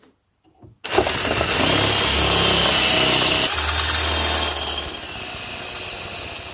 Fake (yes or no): no